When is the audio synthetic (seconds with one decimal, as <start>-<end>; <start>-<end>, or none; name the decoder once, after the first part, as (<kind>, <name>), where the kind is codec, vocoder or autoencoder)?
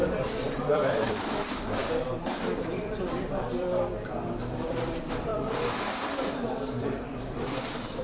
0.0-1.8 (vocoder, BigVGAN v2); 2.4-8.0